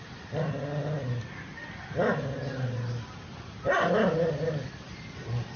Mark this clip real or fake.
real